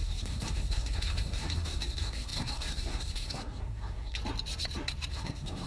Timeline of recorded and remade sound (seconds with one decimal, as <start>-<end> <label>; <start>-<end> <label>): 0.0-4.2 remade; 4.2-5.1 recorded; 5.1-5.7 remade